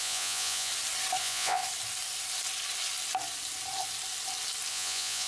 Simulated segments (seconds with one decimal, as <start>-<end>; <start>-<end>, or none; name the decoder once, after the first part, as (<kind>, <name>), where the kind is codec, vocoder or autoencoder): 0.0-0.7 (vocoder, Vocos); 1.2-1.6; 4.7-5.3